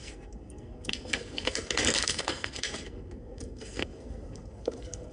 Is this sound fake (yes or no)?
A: yes